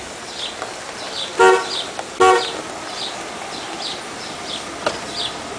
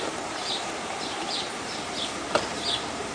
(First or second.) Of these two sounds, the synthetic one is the second